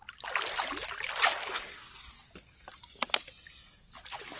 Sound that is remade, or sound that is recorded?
recorded